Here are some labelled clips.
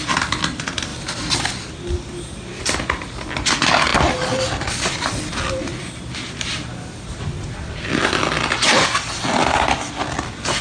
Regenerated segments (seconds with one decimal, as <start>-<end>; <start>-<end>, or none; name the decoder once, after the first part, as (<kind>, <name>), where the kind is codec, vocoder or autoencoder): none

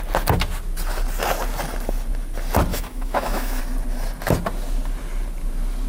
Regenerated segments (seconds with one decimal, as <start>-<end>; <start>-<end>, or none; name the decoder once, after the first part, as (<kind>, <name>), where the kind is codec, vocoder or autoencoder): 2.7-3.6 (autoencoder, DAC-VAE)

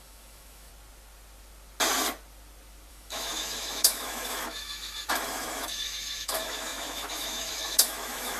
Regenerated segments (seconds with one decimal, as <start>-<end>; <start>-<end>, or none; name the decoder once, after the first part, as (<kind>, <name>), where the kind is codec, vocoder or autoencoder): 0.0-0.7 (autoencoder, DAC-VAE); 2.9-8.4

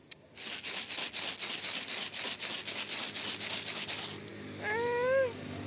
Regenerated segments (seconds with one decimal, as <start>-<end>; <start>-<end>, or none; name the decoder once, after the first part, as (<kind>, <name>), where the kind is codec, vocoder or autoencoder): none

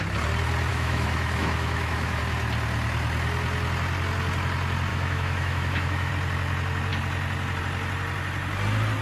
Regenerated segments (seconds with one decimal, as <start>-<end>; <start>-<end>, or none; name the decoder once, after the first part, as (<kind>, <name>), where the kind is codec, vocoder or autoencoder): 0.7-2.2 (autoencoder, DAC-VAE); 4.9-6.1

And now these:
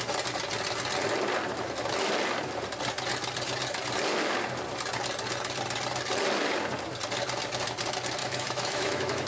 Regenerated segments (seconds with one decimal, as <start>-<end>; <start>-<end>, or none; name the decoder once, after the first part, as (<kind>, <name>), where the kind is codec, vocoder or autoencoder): 8.2-9.3 (autoencoder, DAC-VAE)

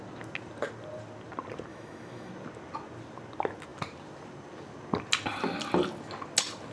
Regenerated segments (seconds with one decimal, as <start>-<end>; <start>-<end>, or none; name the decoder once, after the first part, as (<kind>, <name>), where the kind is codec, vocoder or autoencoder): 1.7-2.3 (autoencoder, DAC-VAE)